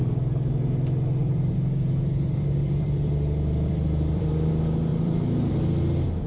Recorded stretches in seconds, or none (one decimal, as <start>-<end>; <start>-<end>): 0.0-1.2; 4.5-4.9; 5.5-6.3